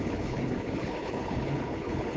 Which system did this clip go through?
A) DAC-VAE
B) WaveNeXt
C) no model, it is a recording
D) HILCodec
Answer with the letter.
D